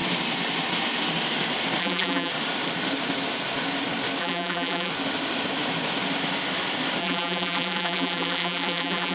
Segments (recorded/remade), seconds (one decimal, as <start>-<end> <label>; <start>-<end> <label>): 0.0-1.8 recorded; 1.8-2.3 remade; 2.3-4.2 recorded; 4.2-4.9 remade; 4.9-7.0 recorded; 7.0-9.1 remade